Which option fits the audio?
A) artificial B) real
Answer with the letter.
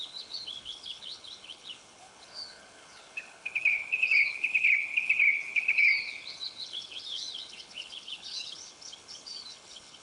A